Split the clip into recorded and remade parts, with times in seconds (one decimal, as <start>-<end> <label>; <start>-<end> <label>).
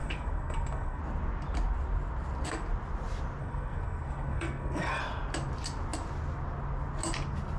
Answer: 0.0-1.0 remade; 1.0-3.4 recorded; 3.4-5.0 remade; 5.0-7.6 recorded